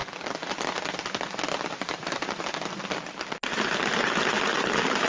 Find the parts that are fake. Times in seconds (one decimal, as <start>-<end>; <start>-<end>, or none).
none